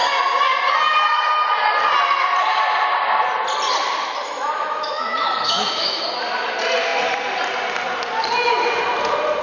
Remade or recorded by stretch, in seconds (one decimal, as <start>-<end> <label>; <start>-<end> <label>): 0.0-4.0 recorded; 4.0-6.0 remade; 6.0-9.4 recorded